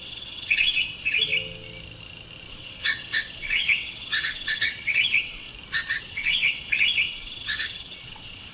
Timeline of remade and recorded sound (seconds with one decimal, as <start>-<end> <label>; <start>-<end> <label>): 0.0-1.3 remade; 1.3-2.5 recorded; 2.5-5.5 remade; 5.5-6.0 recorded; 6.0-8.5 remade